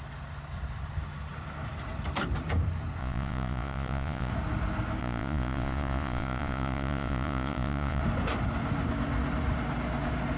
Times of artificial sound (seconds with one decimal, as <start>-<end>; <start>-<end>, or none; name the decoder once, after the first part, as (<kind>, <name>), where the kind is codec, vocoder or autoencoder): 3.0-4.3 (vocoder, Vocos); 5.0-8.0